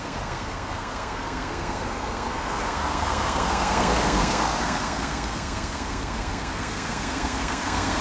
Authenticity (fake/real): fake